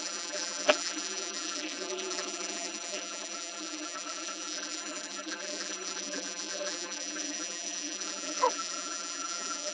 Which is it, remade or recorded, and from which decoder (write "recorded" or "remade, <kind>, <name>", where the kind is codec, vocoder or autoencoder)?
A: remade, vocoder, BigVGAN v2